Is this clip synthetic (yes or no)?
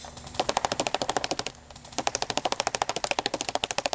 no